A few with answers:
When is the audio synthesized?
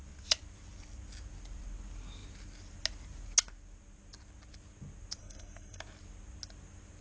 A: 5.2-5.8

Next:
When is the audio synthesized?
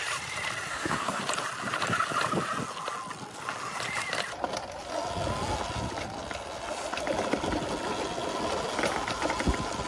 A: 0.7-1.2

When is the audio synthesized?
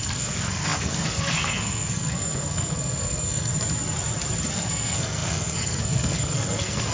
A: 0.0-3.5; 4.5-6.9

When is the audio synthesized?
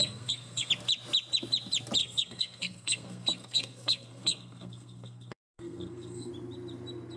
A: 0.0-0.7; 2.0-6.3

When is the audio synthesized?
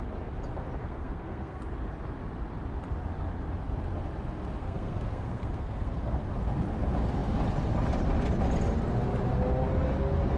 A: 0.8-1.6; 4.6-6.3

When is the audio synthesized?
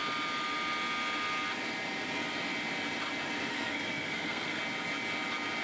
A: 3.5-4.6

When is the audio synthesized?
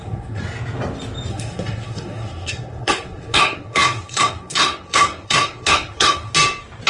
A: 0.0-0.4; 1.3-6.3